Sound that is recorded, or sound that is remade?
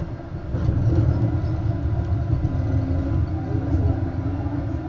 recorded